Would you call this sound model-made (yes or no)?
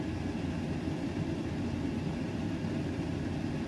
no